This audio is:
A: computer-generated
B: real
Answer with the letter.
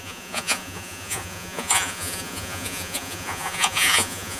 A